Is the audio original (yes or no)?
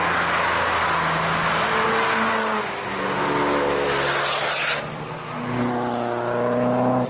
yes